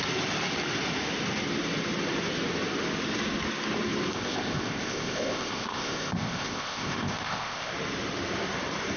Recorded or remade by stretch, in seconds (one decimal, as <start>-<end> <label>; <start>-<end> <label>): 0.0-4.1 recorded; 4.1-7.7 remade; 7.7-9.0 recorded